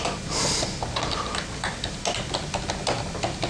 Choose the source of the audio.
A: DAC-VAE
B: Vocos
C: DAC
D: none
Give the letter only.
D